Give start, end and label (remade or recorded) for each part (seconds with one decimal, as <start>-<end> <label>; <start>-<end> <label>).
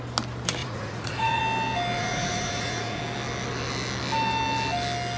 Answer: 0.0-0.6 recorded; 0.6-1.4 remade; 1.4-2.0 recorded; 2.0-3.0 remade; 3.0-5.2 recorded